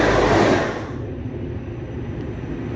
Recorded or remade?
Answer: recorded